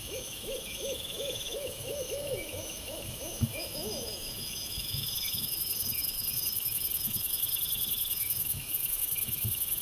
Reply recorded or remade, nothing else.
remade